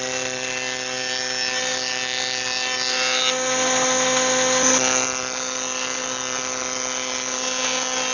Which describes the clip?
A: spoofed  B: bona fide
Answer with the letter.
B